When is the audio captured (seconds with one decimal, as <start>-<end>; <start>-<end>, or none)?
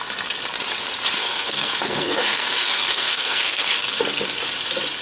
0.0-1.2; 4.2-5.0